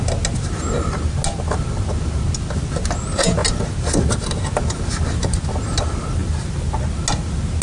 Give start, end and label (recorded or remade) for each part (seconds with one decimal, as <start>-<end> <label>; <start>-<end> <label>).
0.0-7.6 recorded